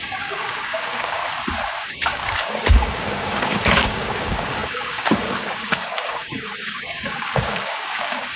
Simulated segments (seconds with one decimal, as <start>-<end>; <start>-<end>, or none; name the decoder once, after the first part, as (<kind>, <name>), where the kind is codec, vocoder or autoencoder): 0.0-1.2 (codec, DAC); 1.8-8.4